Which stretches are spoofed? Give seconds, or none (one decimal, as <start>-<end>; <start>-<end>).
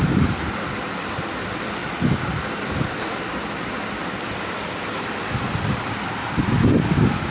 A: none